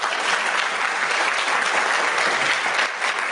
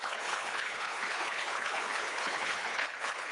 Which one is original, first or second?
first